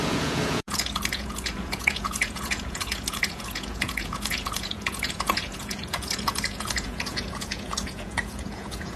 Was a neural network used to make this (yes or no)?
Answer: yes